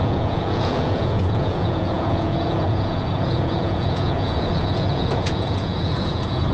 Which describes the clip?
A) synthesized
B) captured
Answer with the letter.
A